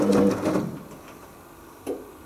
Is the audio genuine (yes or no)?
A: yes